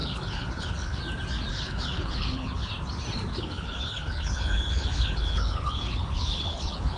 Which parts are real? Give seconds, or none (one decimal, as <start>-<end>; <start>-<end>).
1.0-1.5; 2.7-3.3